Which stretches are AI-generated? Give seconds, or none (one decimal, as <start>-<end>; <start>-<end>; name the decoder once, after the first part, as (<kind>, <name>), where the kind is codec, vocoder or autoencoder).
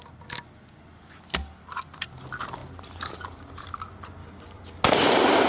4.2-5.1 (codec, DAC)